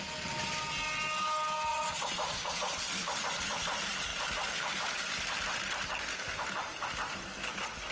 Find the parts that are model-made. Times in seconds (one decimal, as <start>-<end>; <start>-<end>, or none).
1.7-2.8

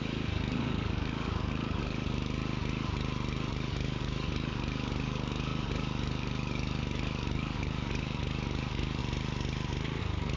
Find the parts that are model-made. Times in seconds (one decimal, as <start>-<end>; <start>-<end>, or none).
0.0-2.4; 3.5-9.0; 10.0-10.4